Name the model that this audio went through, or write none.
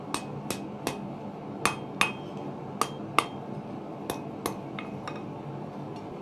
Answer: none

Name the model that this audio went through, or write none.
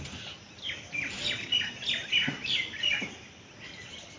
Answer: none